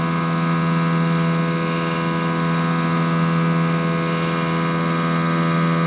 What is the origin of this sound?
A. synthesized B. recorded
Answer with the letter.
B